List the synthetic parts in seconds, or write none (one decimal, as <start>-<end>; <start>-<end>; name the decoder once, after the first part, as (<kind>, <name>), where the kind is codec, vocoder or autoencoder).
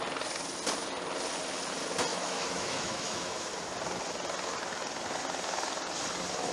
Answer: 2.1-3.5 (autoencoder, DAC-VAE)